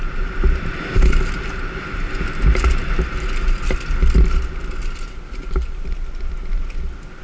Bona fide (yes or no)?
yes